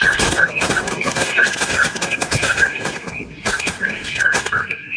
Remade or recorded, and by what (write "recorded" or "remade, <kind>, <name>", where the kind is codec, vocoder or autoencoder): remade, codec, SNAC